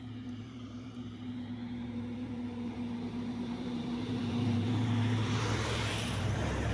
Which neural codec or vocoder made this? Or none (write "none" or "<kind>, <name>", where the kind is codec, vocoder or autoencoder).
vocoder, BigVGAN v2